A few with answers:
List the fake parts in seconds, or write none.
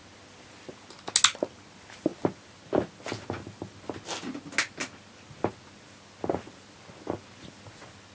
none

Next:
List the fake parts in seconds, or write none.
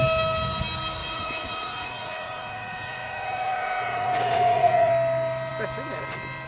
1.0-4.9 (vocoder, Vocos)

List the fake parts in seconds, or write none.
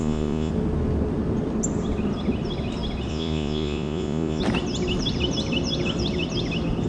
0.0-0.5 (vocoder, Vocos); 3.1-4.4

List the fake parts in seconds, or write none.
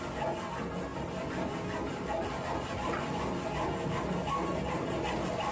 none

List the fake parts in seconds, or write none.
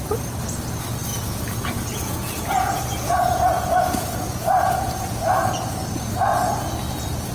1.1-5.5 (vocoder, Vocos)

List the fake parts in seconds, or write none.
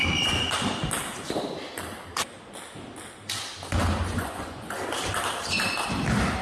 4.0-4.7 (vocoder, Vocos)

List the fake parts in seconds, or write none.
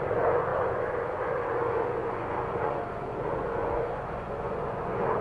0.0-5.2 (vocoder, Vocos)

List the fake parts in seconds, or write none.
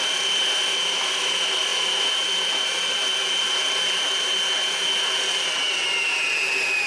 none